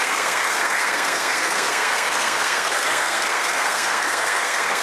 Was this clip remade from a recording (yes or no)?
yes